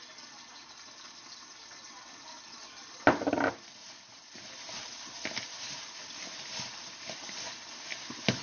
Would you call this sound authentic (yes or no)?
yes